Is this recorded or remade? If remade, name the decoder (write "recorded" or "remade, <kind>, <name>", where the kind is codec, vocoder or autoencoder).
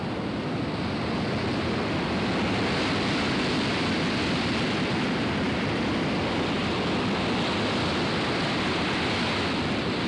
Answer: recorded